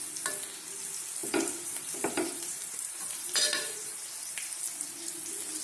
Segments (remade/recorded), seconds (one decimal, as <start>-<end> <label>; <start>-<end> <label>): 0.0-1.2 recorded; 1.2-4.6 remade; 4.6-5.6 recorded